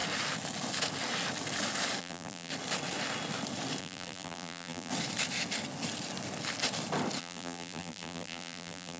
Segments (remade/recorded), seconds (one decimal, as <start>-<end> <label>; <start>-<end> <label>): 0.0-2.0 recorded; 2.0-2.5 remade; 2.5-3.8 recorded; 3.8-4.9 remade; 4.9-7.2 recorded; 7.2-9.0 remade